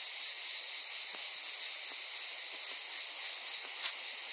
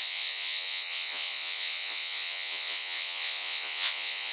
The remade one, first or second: second